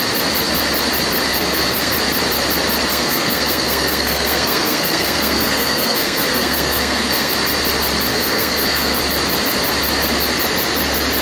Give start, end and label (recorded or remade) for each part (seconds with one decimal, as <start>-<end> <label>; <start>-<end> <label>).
0.0-1.3 recorded; 1.3-1.9 remade; 1.9-2.9 recorded; 2.9-7.3 remade; 7.3-8.1 recorded; 8.1-9.0 remade; 9.0-11.2 recorded

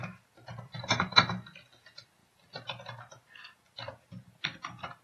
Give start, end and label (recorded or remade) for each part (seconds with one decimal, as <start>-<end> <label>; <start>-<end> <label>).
0.0-5.0 recorded

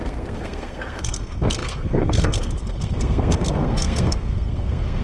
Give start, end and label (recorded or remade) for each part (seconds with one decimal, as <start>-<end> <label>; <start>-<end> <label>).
0.0-5.0 remade

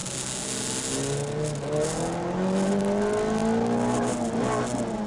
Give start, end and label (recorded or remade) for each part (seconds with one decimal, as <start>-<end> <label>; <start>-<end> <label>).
0.0-5.1 recorded

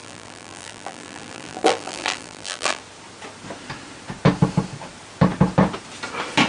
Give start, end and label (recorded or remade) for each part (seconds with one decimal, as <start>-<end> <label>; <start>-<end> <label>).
0.0-2.8 remade; 2.8-6.5 recorded

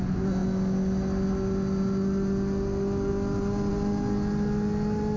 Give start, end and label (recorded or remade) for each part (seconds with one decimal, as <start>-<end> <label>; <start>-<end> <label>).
0.0-5.2 recorded

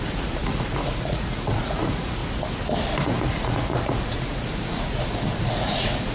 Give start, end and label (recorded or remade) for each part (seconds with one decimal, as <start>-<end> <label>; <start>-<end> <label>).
0.0-2.2 remade; 2.2-3.0 recorded; 3.0-6.1 remade